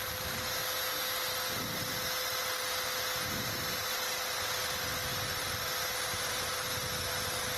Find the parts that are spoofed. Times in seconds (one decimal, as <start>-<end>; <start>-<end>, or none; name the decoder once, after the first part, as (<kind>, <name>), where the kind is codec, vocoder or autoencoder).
none